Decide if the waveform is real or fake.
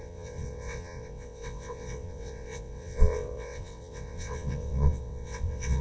fake